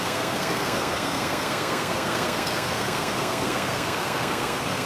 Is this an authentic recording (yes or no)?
no